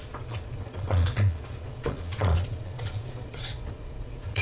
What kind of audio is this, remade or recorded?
remade